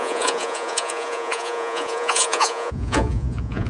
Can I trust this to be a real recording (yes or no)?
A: no